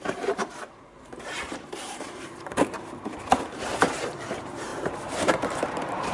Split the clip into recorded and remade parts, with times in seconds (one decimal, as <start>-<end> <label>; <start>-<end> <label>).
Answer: 0.0-6.1 remade